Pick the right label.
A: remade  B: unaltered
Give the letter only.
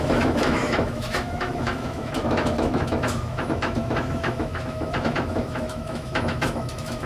A